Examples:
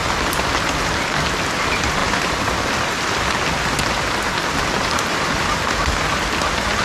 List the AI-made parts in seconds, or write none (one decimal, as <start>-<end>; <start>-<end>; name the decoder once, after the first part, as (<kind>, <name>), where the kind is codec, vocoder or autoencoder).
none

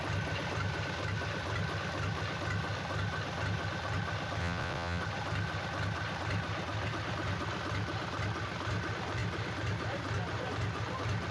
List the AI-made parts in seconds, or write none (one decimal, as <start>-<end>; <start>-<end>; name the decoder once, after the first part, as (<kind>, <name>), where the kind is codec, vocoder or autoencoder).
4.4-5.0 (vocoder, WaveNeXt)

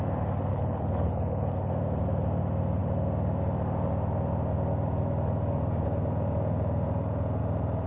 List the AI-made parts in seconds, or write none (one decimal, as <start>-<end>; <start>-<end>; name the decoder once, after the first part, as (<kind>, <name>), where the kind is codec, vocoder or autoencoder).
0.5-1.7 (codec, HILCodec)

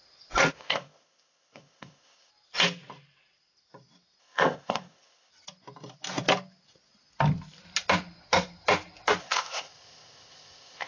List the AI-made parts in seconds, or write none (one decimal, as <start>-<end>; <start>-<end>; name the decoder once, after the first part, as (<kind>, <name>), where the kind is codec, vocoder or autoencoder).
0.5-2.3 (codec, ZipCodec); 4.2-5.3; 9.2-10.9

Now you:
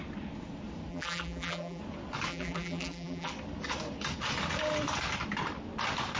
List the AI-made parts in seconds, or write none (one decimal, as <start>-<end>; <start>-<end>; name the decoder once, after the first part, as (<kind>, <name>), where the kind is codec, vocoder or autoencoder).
0.9-1.8 (vocoder, BigVGAN v2); 2.3-3.3

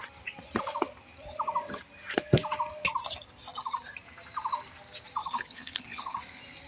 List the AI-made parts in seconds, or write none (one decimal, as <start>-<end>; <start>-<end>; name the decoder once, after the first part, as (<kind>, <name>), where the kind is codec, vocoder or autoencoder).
5.2-6.2 (codec, HILCodec)